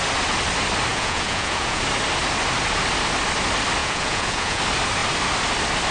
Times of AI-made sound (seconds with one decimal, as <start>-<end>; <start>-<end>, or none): 0.9-1.8; 3.8-4.6